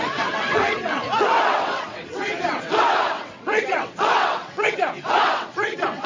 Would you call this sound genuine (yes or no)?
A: no